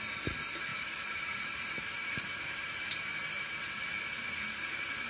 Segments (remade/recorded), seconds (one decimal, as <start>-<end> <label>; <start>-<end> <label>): 0.0-0.7 recorded; 0.7-3.8 remade; 3.8-5.1 recorded